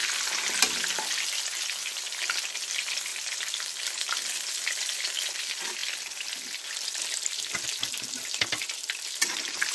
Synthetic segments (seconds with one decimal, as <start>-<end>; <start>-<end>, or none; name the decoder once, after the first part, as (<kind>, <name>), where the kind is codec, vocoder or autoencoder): 3.1-4.5 (vocoder, BigVGAN v2)